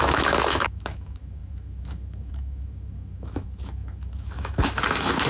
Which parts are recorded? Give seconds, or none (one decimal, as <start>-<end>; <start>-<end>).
none